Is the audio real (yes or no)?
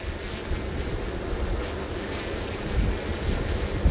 yes